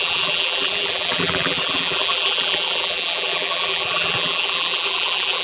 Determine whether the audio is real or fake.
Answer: fake